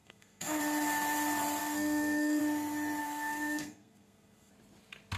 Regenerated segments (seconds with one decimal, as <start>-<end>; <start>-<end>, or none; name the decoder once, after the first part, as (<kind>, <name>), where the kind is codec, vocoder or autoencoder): 0.0-0.6 (codec, SNAC); 1.6-2.4; 3.0-4.5

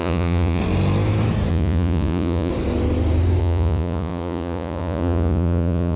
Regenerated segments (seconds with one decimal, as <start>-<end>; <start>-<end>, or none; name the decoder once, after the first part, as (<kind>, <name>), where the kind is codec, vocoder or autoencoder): 0.0-0.6 (vocoder, Vocos); 1.5-2.5; 3.4-6.0

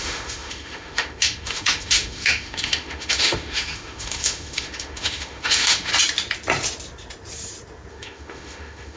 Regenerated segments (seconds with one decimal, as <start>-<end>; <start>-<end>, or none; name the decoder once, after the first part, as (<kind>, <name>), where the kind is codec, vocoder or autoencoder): 0.0-5.9 (autoencoder, DAC-VAE); 7.9-9.0

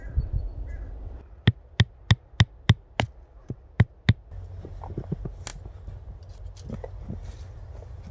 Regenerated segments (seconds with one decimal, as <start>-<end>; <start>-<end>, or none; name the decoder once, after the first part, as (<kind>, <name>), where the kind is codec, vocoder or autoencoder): none

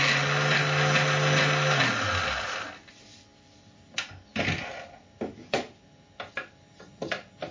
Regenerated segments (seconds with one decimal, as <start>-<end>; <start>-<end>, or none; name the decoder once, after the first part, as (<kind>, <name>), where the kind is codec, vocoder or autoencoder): none

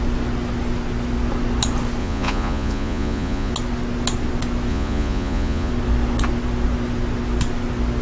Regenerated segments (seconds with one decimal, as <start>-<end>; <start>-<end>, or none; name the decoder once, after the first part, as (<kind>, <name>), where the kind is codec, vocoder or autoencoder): 2.0-3.5 (vocoder, Vocos); 4.7-5.7

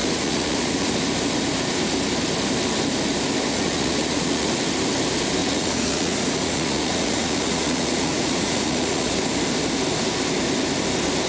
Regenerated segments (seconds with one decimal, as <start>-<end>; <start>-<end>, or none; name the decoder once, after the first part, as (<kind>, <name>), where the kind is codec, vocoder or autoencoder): 0.0-0.9 (vocoder, Vocos); 3.5-4.5; 5.4-9.1

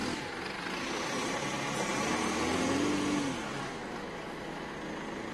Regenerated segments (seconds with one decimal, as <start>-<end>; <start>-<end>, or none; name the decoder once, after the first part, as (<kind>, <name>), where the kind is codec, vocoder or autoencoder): 3.5-4.7 (autoencoder, DAC-VAE)